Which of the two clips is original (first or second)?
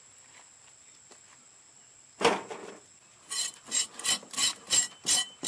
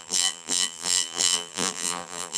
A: first